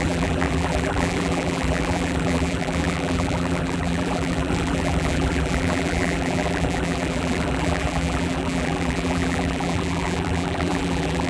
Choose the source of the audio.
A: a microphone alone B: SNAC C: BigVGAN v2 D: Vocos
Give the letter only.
C